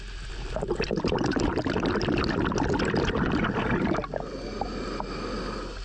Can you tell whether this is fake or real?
real